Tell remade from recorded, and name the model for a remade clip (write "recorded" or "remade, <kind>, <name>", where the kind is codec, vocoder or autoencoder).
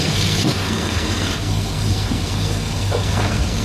remade, codec, SNAC